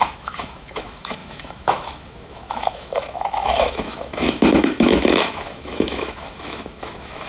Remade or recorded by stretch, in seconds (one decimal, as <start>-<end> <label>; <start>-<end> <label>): 0.0-7.3 remade